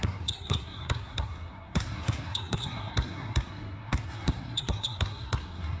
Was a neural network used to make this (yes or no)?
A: yes